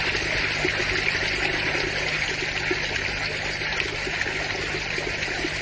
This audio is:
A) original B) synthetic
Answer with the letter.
A